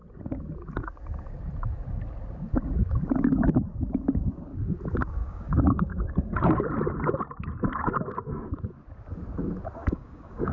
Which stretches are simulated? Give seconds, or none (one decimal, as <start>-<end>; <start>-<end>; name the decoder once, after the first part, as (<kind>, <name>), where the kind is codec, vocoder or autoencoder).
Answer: 5.2-6.6 (codec, DAC); 9.8-10.5